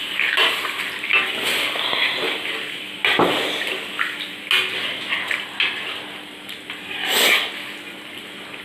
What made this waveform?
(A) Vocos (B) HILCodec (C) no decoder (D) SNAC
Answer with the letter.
C